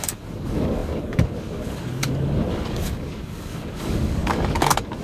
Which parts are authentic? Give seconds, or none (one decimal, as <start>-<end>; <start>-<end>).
none